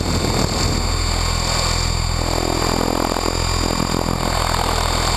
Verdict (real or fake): real